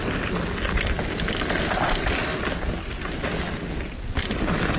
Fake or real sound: real